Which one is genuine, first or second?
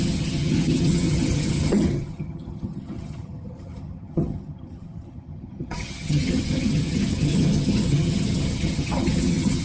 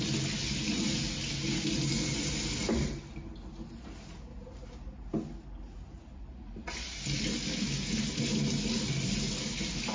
second